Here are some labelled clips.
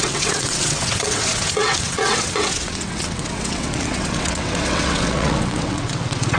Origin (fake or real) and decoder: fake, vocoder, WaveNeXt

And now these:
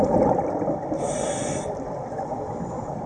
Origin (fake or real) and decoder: real